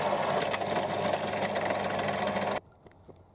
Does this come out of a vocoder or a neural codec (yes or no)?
no